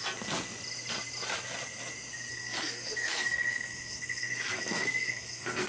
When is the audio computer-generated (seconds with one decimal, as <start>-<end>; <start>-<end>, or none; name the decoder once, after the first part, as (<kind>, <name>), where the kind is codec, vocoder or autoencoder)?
2.3-5.7 (codec, SNAC)